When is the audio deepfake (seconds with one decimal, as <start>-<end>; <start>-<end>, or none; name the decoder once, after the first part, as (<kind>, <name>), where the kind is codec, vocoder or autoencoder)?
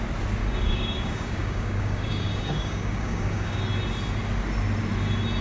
0.4-3.6 (codec, DAC)